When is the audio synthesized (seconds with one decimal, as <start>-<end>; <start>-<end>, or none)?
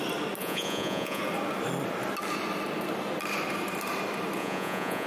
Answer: 0.4-1.2; 4.4-5.1